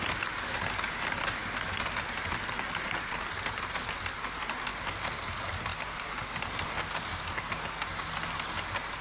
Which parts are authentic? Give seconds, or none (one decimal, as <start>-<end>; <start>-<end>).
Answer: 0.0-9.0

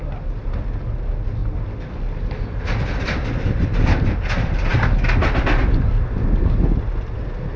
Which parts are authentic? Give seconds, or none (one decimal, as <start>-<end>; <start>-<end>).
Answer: 0.0-7.6

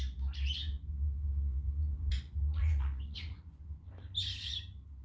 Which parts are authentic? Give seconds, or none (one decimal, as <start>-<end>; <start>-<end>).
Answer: 0.0-0.6; 3.6-5.0